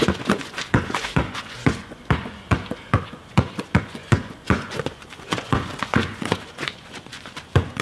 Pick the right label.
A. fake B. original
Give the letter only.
A